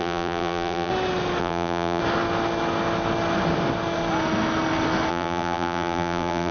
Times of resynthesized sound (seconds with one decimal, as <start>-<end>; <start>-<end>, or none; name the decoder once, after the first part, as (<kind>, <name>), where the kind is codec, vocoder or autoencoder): 0.0-0.9 (vocoder, BigVGAN v2); 1.4-2.0; 5.1-6.5

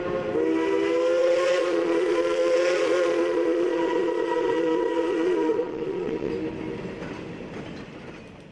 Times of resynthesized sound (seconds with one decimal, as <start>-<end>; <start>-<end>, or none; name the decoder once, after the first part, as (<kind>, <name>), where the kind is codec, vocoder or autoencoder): 1.2-6.3 (vocoder, Vocos)